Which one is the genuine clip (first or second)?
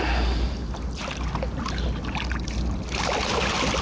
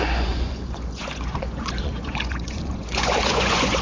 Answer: first